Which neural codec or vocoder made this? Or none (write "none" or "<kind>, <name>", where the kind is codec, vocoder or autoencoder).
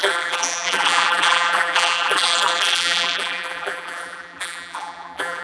vocoder, BigVGAN v2